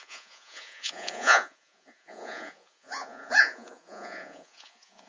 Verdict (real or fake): fake